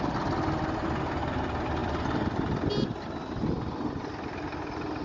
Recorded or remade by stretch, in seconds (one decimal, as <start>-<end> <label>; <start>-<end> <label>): 0.0-5.0 recorded